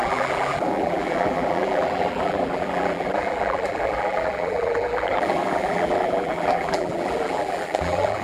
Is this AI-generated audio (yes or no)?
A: yes